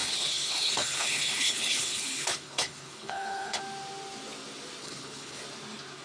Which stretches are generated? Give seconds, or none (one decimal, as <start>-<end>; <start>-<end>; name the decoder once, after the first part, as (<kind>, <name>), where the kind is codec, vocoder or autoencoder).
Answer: 0.0-3.6 (codec, HILCodec); 4.8-5.4